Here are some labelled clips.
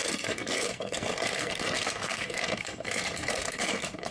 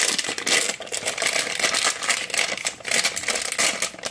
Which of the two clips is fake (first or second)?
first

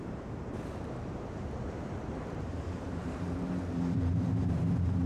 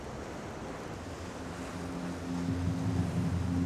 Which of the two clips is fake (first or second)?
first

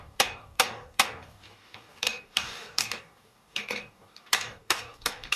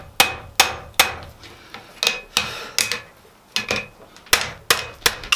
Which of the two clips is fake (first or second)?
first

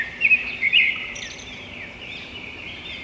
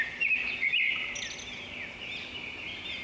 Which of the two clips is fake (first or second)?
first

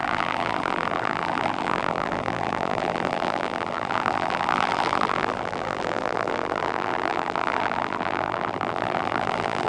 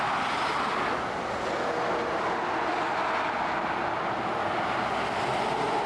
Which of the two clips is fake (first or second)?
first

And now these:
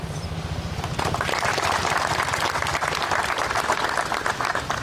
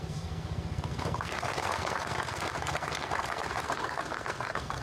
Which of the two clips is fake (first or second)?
second